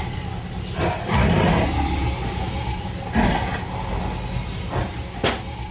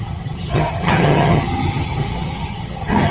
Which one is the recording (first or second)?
first